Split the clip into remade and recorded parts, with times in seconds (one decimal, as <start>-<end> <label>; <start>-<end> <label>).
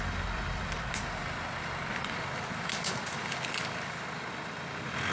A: 0.0-5.1 recorded